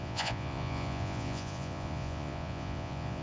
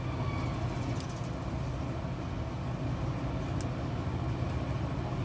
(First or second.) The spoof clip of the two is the first